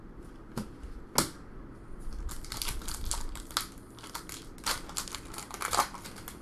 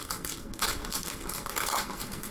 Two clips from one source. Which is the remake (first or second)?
second